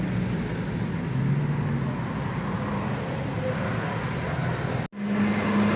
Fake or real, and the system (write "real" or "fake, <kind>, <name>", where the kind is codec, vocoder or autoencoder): real